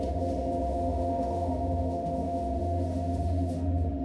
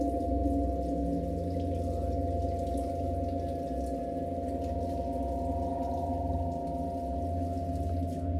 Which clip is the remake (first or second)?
first